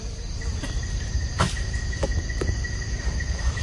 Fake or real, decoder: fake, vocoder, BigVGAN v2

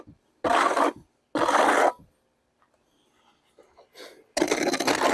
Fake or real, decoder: real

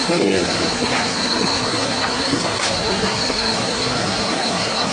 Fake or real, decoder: fake, codec, SNAC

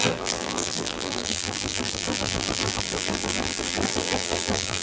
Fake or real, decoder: fake, vocoder, BigVGAN v2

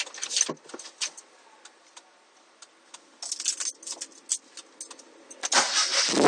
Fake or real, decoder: real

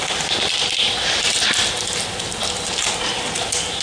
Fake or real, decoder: real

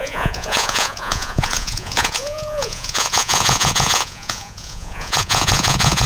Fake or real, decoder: fake, vocoder, Vocos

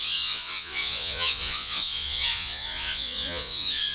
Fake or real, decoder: fake, vocoder, Vocos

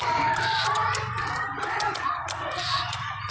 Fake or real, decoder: real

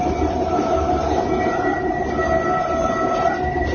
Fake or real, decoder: real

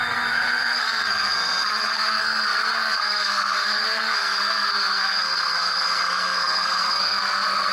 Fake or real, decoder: fake, codec, SNAC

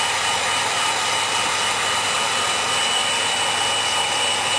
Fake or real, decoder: real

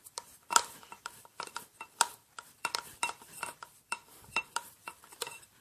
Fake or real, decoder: fake, vocoder, BigVGAN v2